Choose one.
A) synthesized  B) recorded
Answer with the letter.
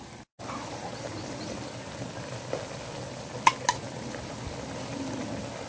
B